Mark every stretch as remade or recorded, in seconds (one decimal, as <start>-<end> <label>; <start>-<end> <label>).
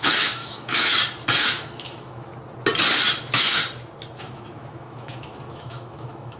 0.0-0.9 remade; 0.9-1.5 recorded; 1.5-2.3 remade; 2.3-3.2 recorded; 3.2-3.6 remade; 3.6-4.2 recorded; 4.2-6.4 remade